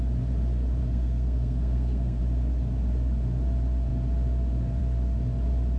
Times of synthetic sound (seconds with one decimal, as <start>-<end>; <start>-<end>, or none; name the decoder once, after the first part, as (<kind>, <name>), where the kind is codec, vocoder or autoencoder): 0.8-2.2 (codec, SNAC)